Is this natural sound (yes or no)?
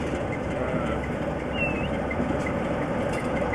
yes